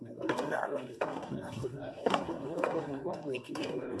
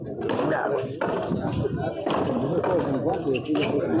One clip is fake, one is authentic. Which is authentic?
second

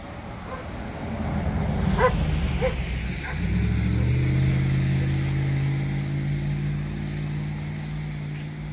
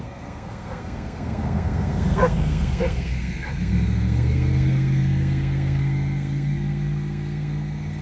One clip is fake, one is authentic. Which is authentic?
first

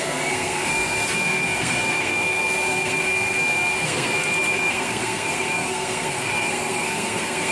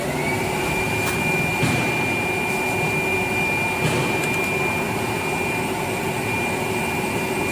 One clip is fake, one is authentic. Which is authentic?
second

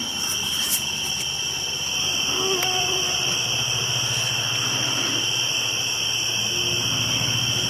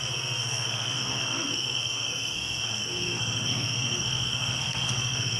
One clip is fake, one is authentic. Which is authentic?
first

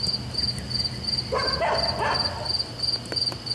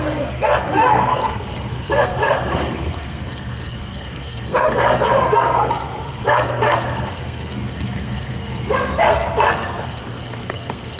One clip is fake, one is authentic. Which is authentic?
first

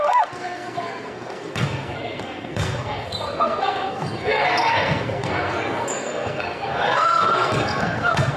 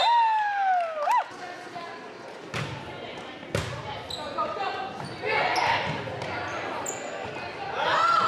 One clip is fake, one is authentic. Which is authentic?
second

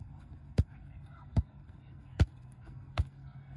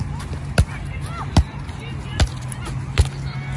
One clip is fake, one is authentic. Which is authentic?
second